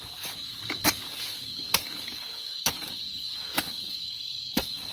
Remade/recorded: remade